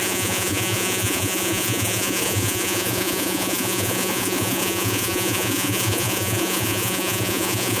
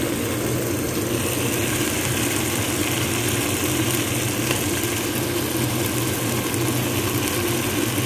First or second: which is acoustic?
second